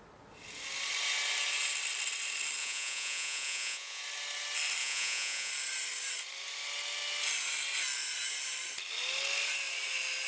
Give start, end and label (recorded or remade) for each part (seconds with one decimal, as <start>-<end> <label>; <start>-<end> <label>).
0.0-2.6 recorded; 2.6-4.0 remade; 4.0-4.8 recorded; 4.8-5.5 remade; 5.5-10.3 recorded